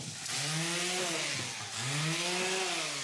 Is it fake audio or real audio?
real